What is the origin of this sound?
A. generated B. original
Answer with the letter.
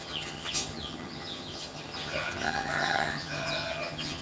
A